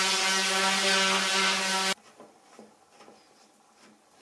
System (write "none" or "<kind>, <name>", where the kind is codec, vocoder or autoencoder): none